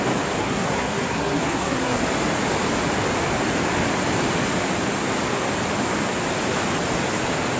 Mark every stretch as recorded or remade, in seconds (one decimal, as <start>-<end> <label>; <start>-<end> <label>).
0.0-0.4 recorded; 0.4-2.0 remade; 2.0-7.6 recorded